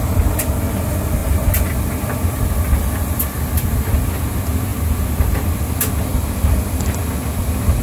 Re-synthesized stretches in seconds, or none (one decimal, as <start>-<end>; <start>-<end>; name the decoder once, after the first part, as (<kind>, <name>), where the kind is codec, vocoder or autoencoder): none